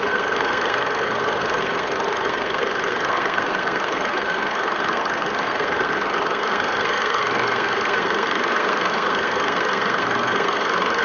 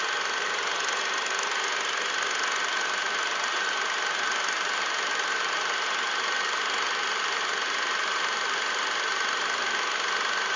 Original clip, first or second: second